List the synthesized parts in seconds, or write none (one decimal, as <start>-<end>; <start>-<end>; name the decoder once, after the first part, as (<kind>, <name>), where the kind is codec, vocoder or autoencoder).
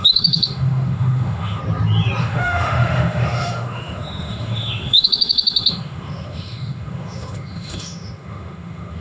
0.0-1.6 (autoencoder, DAC-VAE); 2.2-9.0